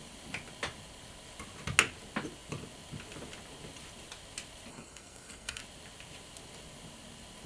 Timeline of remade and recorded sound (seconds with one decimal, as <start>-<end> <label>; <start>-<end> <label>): 0.0-4.7 recorded; 4.7-5.6 remade; 5.6-7.5 recorded